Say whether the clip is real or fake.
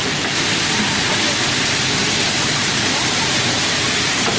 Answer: fake